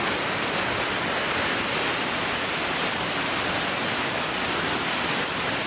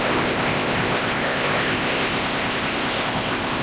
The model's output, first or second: second